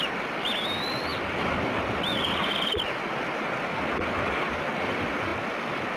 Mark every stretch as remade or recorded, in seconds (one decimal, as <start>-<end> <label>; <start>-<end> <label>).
0.0-1.1 remade; 1.1-4.1 recorded; 4.1-6.0 remade